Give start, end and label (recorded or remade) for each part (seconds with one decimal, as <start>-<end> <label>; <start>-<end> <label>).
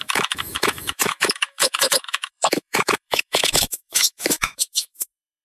0.0-5.4 remade